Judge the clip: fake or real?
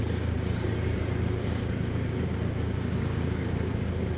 fake